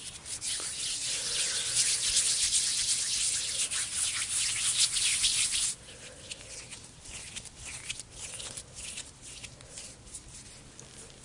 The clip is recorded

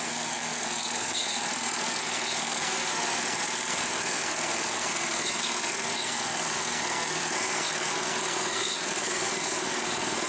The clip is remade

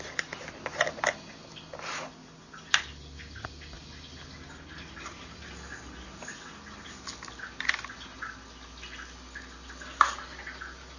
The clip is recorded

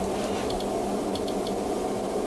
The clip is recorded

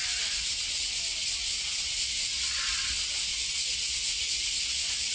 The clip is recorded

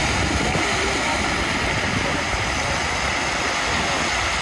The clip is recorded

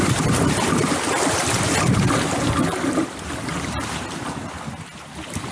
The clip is recorded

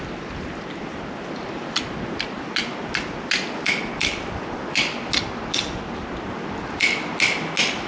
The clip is recorded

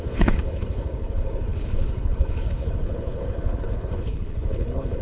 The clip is remade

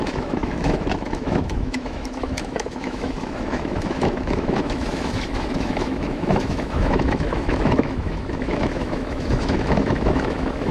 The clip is remade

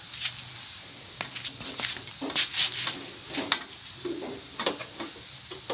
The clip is recorded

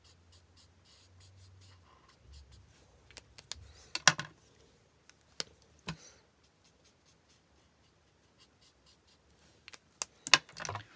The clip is recorded